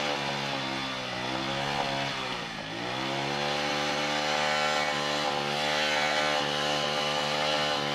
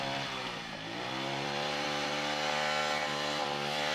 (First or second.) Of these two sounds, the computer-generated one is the second